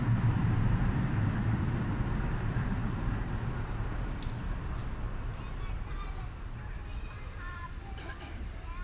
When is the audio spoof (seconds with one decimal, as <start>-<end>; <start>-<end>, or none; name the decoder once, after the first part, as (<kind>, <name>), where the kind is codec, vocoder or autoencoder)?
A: none